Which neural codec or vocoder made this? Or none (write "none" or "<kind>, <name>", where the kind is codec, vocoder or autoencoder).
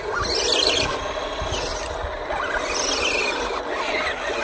none